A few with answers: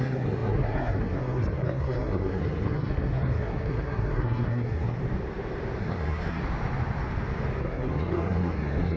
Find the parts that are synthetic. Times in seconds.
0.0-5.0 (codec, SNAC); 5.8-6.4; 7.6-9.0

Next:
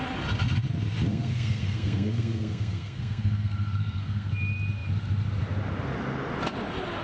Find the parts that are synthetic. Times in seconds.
1.1-4.3 (codec, SNAC)

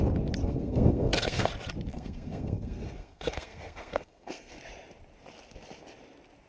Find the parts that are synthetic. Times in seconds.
0.4-1.5 (codec, SNAC); 1.9-4.6

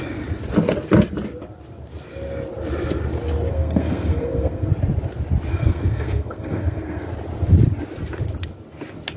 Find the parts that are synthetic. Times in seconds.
3.5-4.7 (codec, SNAC); 5.5-7.1

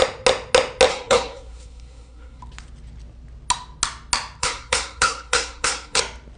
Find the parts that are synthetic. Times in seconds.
0.9-2.4 (codec, SNAC); 4.4-6.0